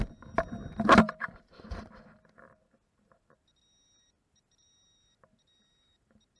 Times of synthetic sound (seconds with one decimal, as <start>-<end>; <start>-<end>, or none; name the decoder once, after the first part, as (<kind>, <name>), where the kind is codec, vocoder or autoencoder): 0.0-6.4 (vocoder, BigVGAN v2)